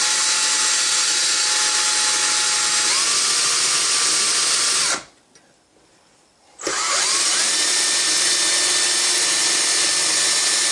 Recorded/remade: recorded